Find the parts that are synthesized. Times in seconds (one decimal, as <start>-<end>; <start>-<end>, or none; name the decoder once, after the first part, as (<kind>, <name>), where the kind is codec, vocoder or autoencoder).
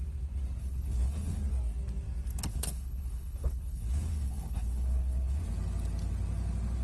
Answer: 0.6-1.4 (codec, HILCodec); 2.5-5.4